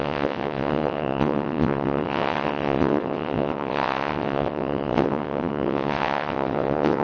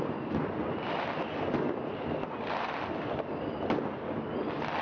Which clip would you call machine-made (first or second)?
first